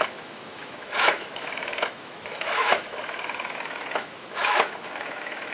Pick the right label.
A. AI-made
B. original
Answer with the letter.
A